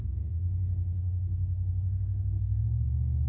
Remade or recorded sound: remade